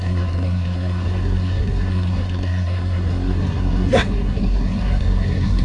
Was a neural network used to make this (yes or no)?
yes